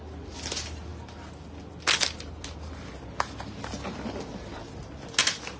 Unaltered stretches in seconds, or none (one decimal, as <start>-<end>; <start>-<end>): 0.0-5.6